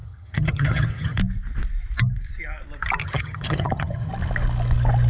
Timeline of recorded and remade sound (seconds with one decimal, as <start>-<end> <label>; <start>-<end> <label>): 0.0-1.2 remade; 1.2-3.0 recorded; 3.0-4.1 remade; 4.1-5.1 recorded

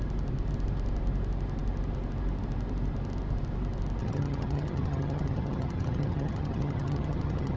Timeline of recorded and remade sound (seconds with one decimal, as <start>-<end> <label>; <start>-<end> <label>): 0.0-4.0 recorded; 4.0-7.6 remade

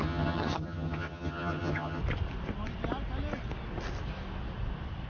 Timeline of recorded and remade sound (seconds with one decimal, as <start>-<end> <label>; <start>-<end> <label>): 0.0-2.0 remade; 2.0-5.1 recorded

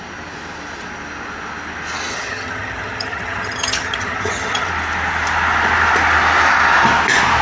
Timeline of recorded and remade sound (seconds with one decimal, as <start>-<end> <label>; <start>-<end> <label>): 0.0-2.1 recorded; 2.1-4.7 remade; 4.7-7.4 recorded

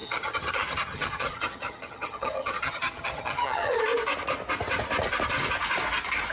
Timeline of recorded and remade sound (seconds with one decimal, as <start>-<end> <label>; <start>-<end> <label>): 0.0-3.8 remade; 3.8-6.3 recorded

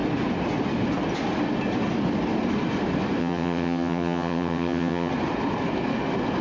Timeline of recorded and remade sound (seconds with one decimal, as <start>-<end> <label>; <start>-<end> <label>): 0.0-3.2 recorded; 3.2-5.1 remade; 5.1-6.4 recorded

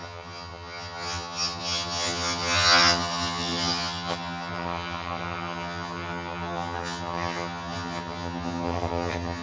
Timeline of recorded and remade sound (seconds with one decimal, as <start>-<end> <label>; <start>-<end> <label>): 0.0-9.4 remade

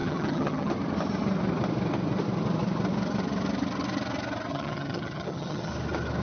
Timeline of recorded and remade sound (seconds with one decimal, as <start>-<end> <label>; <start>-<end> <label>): 0.0-0.7 remade; 0.7-4.5 recorded; 4.5-5.7 remade; 5.7-6.2 recorded